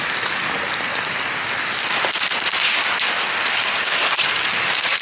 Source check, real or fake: real